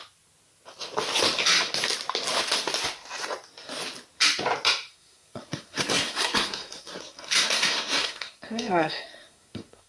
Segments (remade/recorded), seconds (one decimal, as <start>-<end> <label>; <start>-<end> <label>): 0.0-4.9 recorded; 4.9-9.9 remade